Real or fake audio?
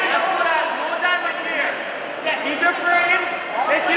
real